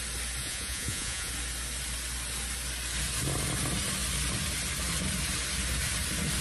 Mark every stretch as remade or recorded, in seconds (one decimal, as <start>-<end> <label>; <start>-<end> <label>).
0.0-0.4 recorded; 0.4-1.3 remade; 1.3-6.4 recorded